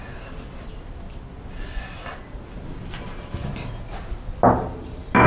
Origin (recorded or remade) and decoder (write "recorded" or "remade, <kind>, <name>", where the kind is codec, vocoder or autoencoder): recorded